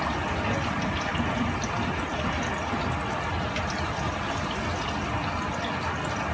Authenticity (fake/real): real